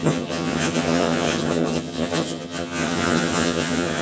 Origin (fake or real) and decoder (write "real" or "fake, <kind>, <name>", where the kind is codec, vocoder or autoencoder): fake, vocoder, HiFi-GAN